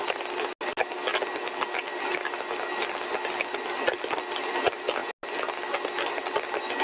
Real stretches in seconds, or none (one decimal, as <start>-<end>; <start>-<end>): 0.0-6.8